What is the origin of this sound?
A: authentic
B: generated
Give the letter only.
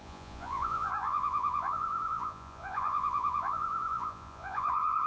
B